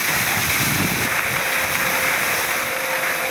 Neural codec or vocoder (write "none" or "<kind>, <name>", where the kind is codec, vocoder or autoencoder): none